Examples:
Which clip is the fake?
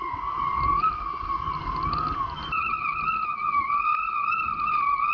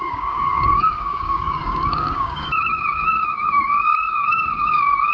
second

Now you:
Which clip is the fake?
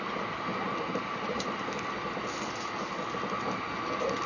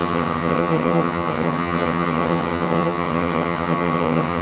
second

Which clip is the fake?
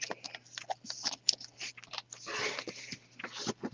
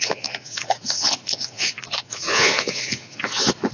second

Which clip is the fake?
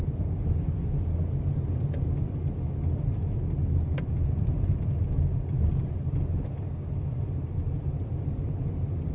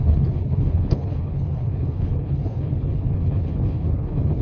second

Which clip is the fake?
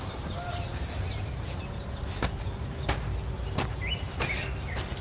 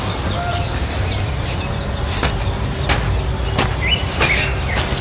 first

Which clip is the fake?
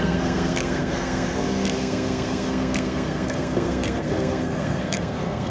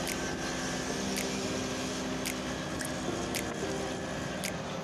first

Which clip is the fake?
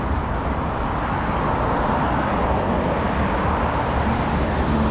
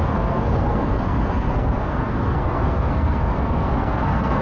second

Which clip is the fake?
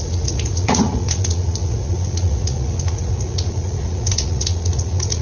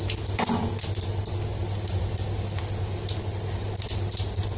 first